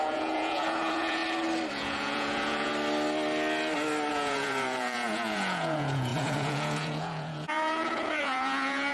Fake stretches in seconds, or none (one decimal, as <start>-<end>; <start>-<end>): 0.0-1.2; 1.7-2.7; 4.1-8.9